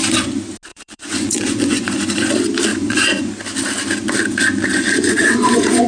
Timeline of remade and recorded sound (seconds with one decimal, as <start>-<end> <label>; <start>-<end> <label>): 0.0-0.7 recorded; 0.7-2.3 remade; 2.3-2.7 recorded; 2.7-3.3 remade; 3.3-4.7 recorded; 4.7-5.9 remade